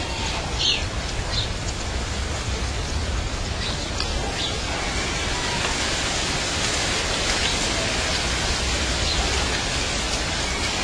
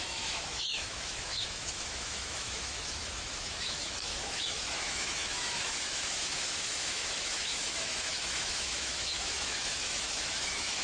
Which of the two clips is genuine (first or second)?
first